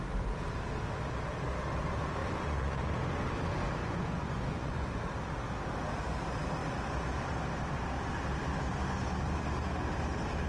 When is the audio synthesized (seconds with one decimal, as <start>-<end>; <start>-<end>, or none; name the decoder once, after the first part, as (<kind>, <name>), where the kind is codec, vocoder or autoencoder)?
2.2-2.9 (vocoder, Vocos); 3.8-5.1